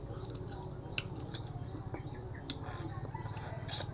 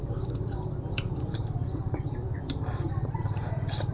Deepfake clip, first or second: second